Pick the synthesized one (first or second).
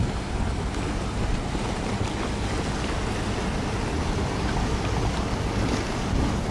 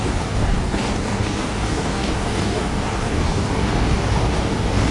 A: second